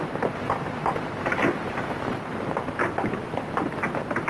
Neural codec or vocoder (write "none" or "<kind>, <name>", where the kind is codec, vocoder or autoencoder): vocoder, BigVGAN v2